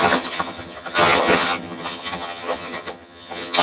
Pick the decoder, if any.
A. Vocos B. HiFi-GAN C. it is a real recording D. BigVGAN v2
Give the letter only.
B